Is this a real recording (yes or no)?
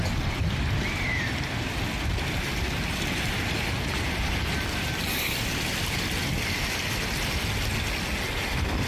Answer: yes